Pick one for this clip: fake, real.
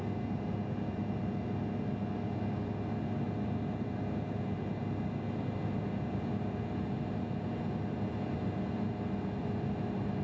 real